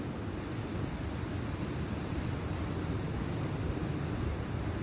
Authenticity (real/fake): real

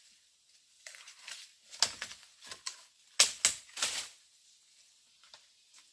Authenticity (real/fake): real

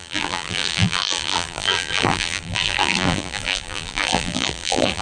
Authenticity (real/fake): fake